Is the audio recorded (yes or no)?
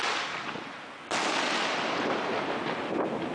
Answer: yes